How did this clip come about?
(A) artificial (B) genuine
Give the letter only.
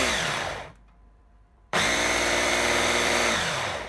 A